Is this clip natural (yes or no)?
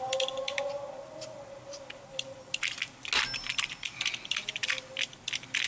yes